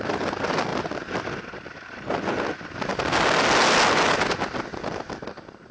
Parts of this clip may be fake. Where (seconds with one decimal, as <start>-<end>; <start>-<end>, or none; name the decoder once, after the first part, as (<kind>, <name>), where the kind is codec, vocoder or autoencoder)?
none